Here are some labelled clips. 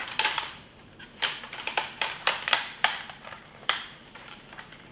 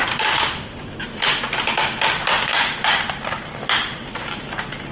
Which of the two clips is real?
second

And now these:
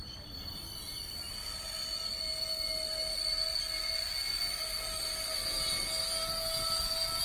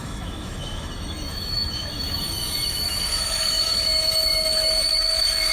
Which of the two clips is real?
first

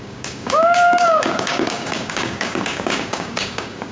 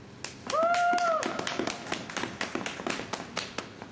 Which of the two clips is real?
second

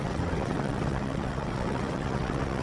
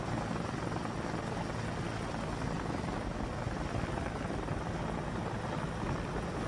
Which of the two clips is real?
second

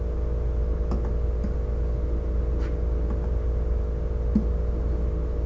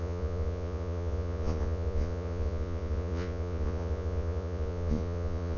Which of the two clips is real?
first